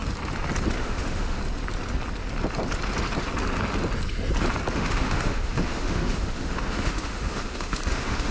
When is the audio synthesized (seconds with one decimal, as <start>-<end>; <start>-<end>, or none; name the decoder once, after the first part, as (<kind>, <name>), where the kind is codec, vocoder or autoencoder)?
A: 0.8-1.4 (autoencoder, DAC-VAE); 4.7-8.3